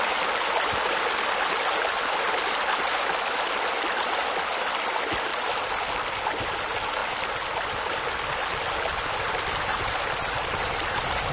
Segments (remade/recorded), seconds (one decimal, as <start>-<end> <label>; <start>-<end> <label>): 0.0-11.3 recorded